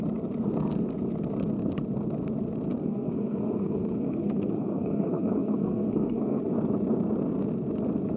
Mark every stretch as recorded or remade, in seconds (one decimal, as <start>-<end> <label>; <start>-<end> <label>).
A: 0.0-2.8 recorded; 2.8-6.4 remade; 6.4-8.2 recorded